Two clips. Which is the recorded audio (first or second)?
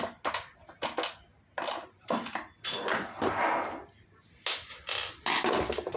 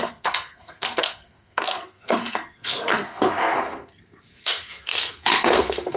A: first